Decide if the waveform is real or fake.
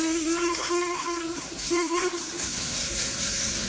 fake